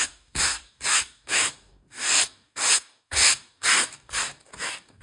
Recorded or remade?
remade